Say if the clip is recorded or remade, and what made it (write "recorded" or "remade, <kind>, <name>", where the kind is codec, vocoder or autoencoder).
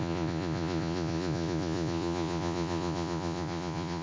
remade, vocoder, Vocos